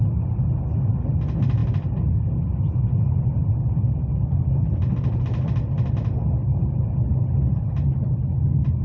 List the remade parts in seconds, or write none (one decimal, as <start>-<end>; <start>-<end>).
none